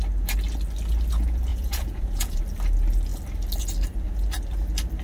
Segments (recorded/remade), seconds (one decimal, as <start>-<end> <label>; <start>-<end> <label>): 0.0-1.5 recorded; 1.5-2.4 remade; 2.4-5.0 recorded

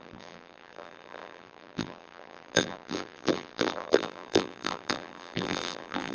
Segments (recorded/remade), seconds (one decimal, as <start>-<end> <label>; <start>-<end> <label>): 0.0-6.1 remade

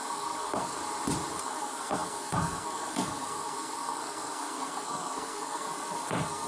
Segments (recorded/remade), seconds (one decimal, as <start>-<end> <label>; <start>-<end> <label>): 0.0-0.8 remade; 0.8-1.4 recorded; 1.4-6.5 remade

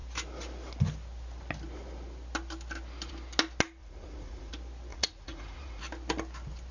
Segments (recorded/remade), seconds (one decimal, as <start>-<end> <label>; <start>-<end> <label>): 0.0-3.8 recorded; 3.8-4.5 remade; 4.5-4.9 recorded; 4.9-5.8 remade; 5.8-6.7 recorded